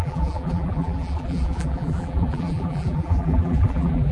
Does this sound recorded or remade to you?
remade